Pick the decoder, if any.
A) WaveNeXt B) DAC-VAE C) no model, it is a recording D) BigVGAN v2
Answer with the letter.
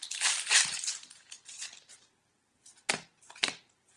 C